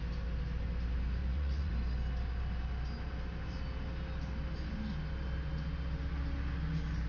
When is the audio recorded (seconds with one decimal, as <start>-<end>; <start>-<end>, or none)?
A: 0.0-1.2; 1.7-7.1